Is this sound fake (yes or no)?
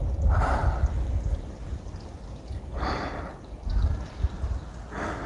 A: no